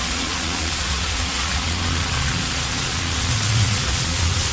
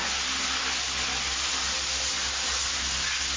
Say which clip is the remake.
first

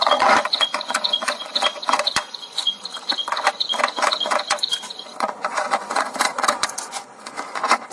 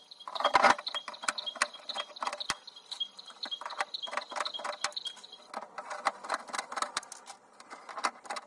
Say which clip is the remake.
first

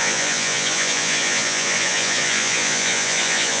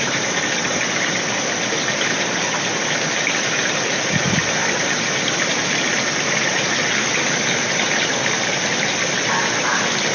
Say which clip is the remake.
first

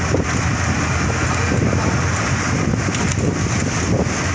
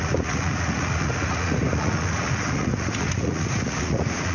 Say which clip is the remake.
second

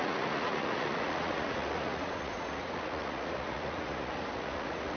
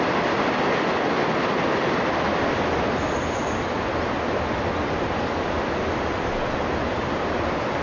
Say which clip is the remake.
first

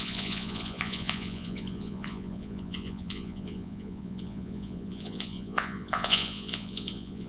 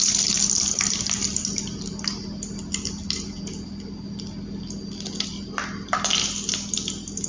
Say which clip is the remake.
first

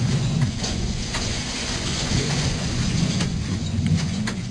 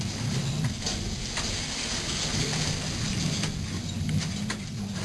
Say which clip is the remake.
first